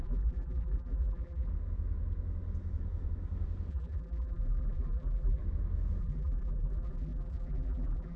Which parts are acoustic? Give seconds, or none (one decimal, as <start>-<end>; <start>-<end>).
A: 1.5-3.7; 5.4-6.0